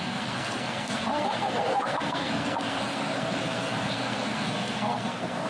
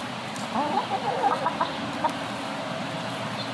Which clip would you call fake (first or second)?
first